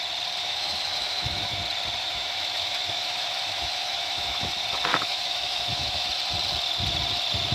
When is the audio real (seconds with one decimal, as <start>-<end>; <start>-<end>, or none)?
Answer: 0.0-0.4; 1.6-2.0; 4.5-4.9; 6.1-7.5